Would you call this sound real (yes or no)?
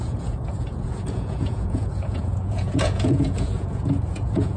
no